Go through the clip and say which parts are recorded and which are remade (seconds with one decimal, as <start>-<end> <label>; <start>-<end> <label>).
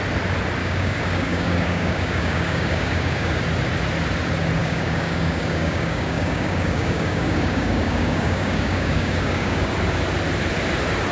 0.0-0.6 recorded; 0.6-3.4 remade; 3.4-4.6 recorded; 4.6-9.7 remade; 9.7-11.1 recorded